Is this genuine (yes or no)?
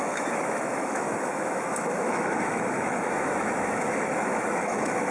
no